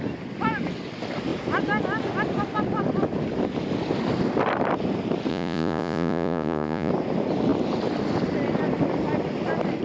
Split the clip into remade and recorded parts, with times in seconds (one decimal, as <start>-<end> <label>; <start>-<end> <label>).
0.0-5.3 recorded; 5.3-6.9 remade; 6.9-9.8 recorded